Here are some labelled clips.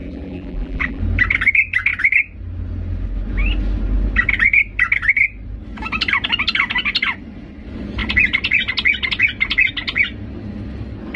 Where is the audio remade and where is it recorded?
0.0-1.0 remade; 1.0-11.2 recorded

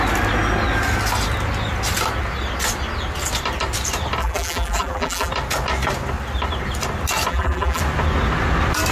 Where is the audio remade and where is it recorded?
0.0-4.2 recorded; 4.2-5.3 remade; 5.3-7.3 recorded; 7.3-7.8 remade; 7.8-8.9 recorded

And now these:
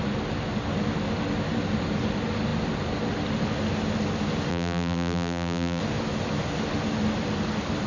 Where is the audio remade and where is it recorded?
0.0-4.5 recorded; 4.5-5.8 remade; 5.8-7.9 recorded

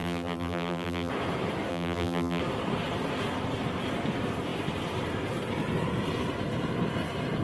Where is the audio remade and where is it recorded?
0.0-1.1 remade; 1.1-1.7 recorded; 1.7-2.4 remade; 2.4-7.4 recorded

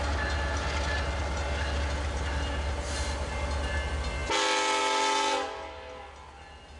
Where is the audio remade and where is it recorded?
0.0-6.8 recorded

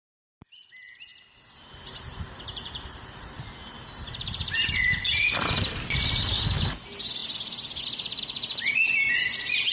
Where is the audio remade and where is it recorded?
0.0-1.1 recorded; 1.1-5.9 remade; 5.9-7.2 recorded; 7.2-8.2 remade; 8.2-9.7 recorded

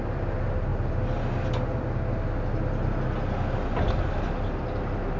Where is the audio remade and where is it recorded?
0.0-5.2 recorded

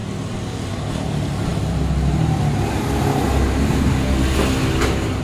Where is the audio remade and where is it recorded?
0.0-5.2 recorded